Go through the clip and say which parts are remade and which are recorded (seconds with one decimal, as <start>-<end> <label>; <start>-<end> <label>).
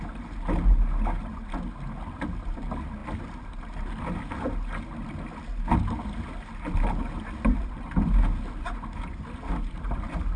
0.0-10.4 recorded